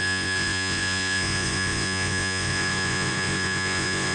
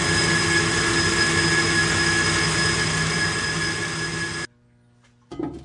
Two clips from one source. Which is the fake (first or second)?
first